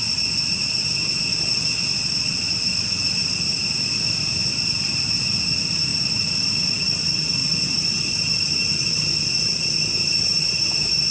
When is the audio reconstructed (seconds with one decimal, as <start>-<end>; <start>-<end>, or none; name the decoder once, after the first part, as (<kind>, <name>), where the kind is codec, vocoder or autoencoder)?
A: 1.3-5.4 (vocoder, BigVGAN v2); 5.9-6.8; 7.4-8.3; 9.5-10.6